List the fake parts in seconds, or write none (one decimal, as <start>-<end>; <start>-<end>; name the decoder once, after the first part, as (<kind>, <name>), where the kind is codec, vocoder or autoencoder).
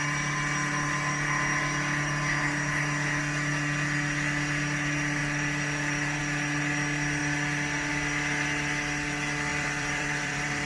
5.2-6.2 (vocoder, BigVGAN v2); 9.5-10.7